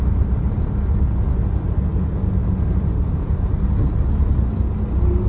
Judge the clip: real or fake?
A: real